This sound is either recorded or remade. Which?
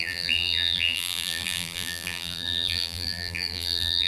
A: remade